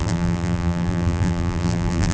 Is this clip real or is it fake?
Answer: fake